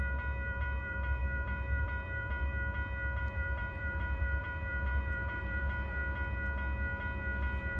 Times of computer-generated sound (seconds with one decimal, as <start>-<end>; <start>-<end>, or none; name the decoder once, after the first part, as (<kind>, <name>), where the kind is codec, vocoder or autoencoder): 0.0-2.5 (vocoder, BigVGAN v2); 3.2-6.0